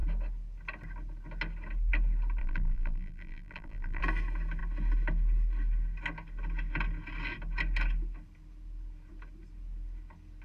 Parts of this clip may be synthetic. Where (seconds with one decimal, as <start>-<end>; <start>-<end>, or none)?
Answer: 2.4-4.0